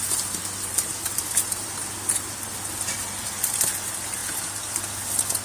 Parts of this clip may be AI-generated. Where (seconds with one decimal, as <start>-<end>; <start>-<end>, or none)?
0.7-1.9; 4.2-4.8